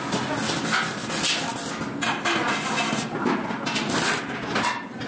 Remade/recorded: recorded